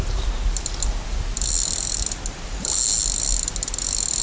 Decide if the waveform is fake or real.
real